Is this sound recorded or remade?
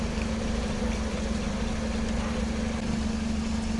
recorded